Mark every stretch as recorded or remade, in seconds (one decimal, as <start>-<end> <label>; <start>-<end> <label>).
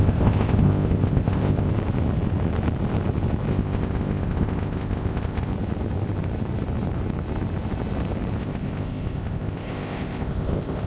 0.0-1.7 remade; 1.7-3.5 recorded; 3.5-5.5 remade; 5.5-8.4 recorded; 8.4-10.9 remade